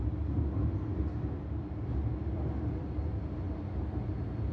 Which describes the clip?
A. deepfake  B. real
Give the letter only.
B